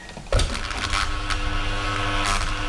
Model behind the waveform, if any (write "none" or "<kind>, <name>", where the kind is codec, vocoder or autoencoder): none